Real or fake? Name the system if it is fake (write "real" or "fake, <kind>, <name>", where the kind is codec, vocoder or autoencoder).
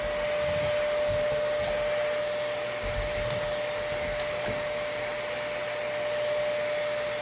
real